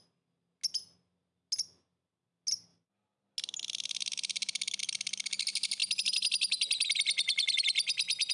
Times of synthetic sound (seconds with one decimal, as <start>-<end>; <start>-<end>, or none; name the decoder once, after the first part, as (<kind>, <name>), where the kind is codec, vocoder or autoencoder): none